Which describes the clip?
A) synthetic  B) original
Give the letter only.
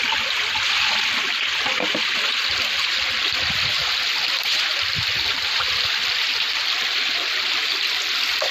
B